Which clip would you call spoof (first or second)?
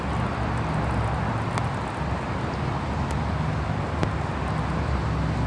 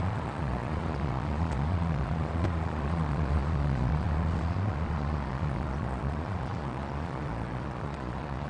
second